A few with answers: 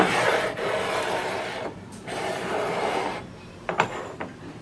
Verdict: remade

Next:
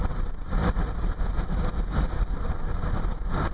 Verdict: remade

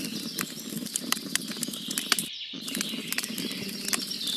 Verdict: remade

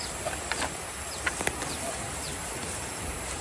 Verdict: recorded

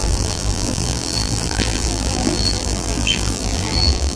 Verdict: remade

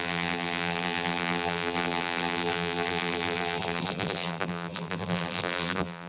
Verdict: remade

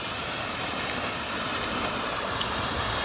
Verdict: remade